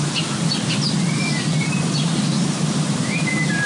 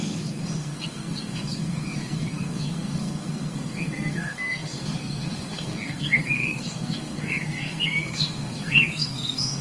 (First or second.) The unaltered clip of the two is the first